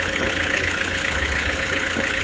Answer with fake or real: fake